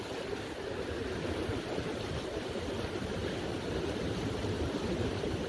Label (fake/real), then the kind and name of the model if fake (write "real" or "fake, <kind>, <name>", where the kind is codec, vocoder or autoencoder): real